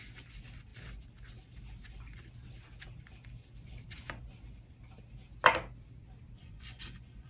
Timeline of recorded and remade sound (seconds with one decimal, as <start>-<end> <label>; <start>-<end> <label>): 0.0-6.4 recorded; 6.4-7.3 remade